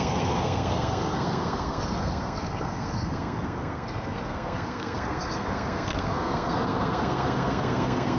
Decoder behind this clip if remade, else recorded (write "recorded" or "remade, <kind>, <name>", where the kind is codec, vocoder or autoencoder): remade, codec, SNAC